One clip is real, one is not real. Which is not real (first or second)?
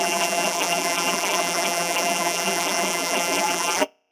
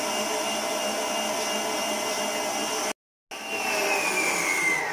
first